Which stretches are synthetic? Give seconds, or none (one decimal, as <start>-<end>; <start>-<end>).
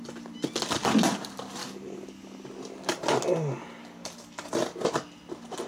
1.6-2.5; 3.8-4.5